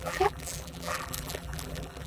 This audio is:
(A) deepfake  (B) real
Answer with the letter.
A